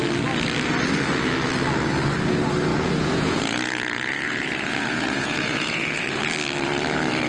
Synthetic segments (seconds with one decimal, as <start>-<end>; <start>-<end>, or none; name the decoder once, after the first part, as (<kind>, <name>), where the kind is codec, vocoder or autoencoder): 2.7-6.2 (vocoder, Vocos)